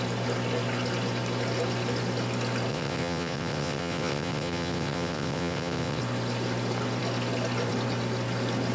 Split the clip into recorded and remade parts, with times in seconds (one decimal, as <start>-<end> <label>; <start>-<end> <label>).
0.0-2.7 recorded; 2.7-6.0 remade; 6.0-8.7 recorded